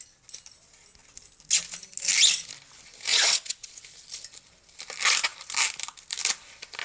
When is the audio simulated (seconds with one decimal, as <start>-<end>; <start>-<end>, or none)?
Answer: 3.1-3.7

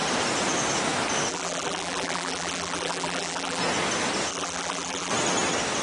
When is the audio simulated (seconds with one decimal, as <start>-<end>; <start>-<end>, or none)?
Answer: 1.3-3.6; 4.3-5.1

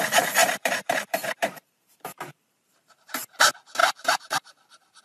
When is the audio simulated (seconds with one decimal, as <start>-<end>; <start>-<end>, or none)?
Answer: 0.4-3.4; 3.8-5.0

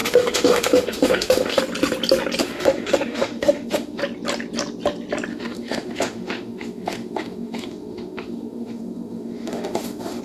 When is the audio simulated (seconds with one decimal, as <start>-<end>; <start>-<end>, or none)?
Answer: 0.0-1.6; 2.4-4.0; 5.3-10.2

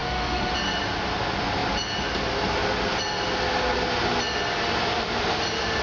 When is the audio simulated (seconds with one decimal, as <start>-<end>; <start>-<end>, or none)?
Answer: 0.0-0.5